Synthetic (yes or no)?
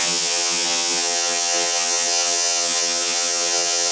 yes